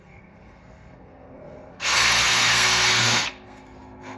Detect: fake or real fake